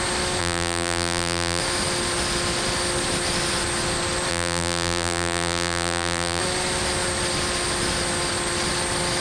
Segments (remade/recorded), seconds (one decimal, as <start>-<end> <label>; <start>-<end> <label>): 0.0-0.4 recorded; 0.4-1.6 remade; 1.6-4.3 recorded; 4.3-6.4 remade; 6.4-9.2 recorded